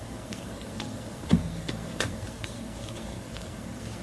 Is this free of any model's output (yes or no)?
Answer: no